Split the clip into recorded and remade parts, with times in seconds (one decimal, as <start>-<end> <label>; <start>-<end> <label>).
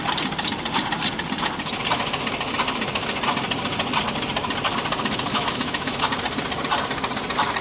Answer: 0.0-5.3 recorded; 5.3-6.0 remade; 6.0-7.6 recorded